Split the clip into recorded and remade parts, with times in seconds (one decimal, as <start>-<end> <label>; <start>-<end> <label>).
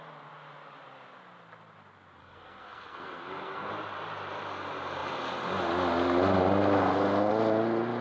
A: 0.0-2.2 recorded; 2.2-3.7 remade; 3.7-8.0 recorded